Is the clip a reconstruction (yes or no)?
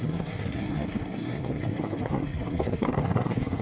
yes